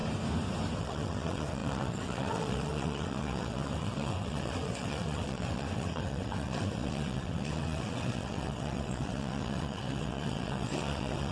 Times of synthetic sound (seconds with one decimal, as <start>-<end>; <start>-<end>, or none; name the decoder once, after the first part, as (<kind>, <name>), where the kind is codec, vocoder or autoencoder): 0.8-11.3 (vocoder, WaveNeXt)